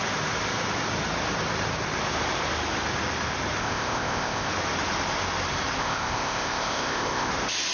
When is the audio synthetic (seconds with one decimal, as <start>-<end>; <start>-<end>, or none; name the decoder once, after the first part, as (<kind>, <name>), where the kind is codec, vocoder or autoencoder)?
3.6-4.5 (codec, ZipCodec); 5.8-7.3